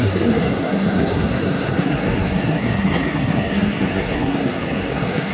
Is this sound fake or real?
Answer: fake